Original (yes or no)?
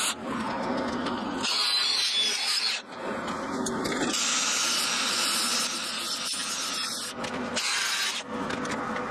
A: yes